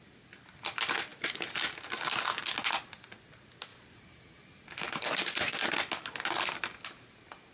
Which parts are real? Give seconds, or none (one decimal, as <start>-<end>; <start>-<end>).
0.0-3.7; 5.6-7.5